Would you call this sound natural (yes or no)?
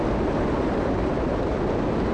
yes